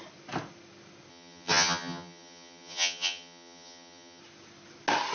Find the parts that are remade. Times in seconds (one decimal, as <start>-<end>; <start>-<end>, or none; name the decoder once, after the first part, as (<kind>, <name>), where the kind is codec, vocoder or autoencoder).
1.1-4.2 (vocoder, HiFi-GAN)